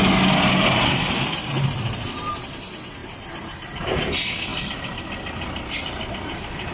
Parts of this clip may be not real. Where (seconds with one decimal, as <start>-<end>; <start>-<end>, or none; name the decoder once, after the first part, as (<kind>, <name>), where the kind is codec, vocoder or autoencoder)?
0.9-3.0 (vocoder, BigVGAN v2); 3.8-4.5; 6.1-6.7